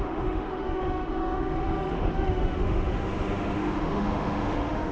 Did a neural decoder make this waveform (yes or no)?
yes